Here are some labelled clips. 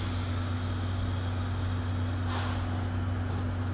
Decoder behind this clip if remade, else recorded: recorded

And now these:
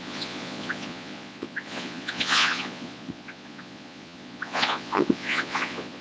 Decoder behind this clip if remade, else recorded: remade, vocoder, Vocos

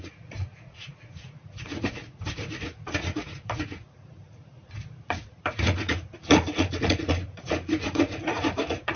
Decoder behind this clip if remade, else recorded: remade, vocoder, Vocos